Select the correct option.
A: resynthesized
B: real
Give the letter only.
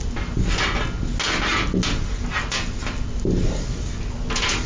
B